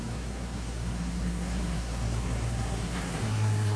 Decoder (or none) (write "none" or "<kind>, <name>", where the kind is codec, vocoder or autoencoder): codec, SNAC